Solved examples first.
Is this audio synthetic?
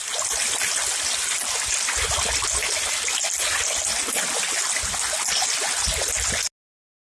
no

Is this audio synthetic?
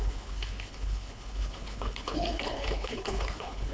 yes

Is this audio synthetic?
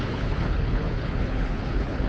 yes